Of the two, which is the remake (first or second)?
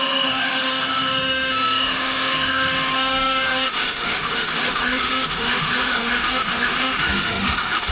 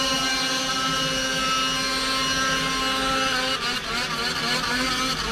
first